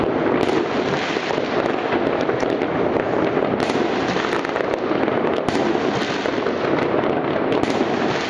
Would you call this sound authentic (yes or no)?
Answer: yes